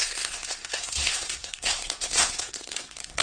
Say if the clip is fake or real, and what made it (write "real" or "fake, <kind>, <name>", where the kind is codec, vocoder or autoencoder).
fake, codec, SNAC